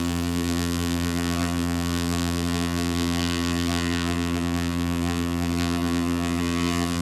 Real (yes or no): no